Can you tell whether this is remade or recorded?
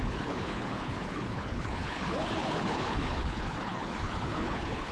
remade